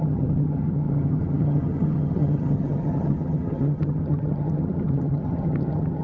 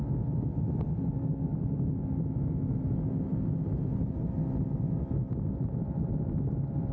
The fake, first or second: first